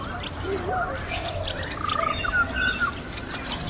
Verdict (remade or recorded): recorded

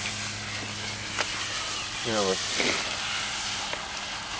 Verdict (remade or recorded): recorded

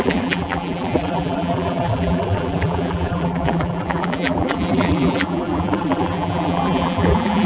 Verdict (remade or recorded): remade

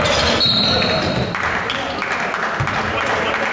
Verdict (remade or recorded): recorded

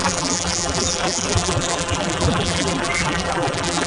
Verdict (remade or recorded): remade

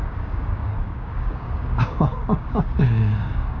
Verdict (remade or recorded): remade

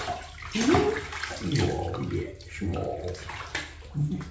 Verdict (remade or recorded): recorded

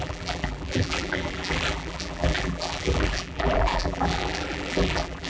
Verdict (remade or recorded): remade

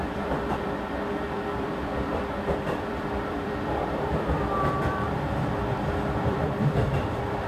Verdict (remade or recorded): remade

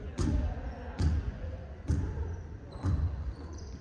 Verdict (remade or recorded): remade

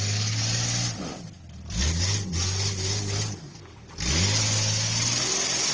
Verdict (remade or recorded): recorded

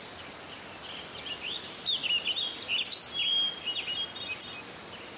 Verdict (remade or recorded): recorded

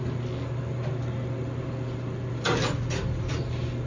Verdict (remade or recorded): recorded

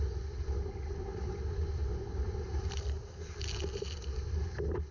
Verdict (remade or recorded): recorded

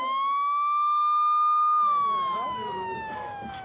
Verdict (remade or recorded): remade